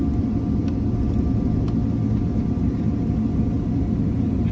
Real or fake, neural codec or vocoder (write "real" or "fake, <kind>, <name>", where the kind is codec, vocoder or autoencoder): real